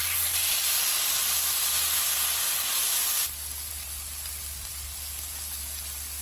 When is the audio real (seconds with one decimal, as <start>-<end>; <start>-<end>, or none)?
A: 0.0-6.2